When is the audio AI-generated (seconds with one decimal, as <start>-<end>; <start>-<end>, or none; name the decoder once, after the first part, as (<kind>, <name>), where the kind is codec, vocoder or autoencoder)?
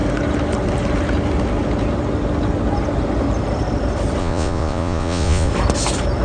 4.2-5.5 (vocoder, Vocos)